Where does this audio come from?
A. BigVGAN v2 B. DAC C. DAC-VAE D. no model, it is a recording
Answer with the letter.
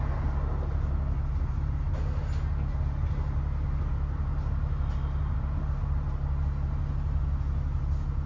D